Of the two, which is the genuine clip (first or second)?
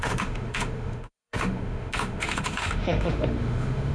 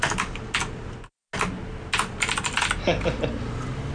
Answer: second